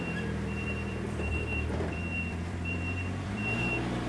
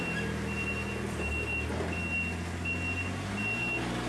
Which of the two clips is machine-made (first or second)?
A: first